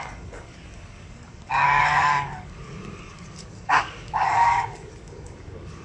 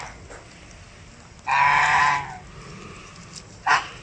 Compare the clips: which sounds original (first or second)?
second